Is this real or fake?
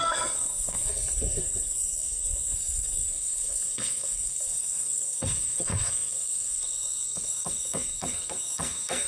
fake